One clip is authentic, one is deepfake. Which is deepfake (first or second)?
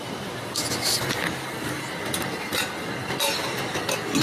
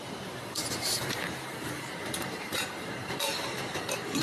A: second